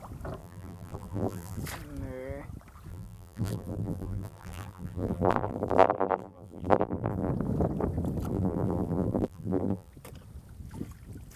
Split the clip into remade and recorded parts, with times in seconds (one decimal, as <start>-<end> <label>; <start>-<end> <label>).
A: 0.0-0.4 recorded; 0.4-1.6 remade; 1.6-2.9 recorded; 2.9-7.3 remade; 7.3-8.3 recorded; 8.3-9.9 remade; 9.9-11.4 recorded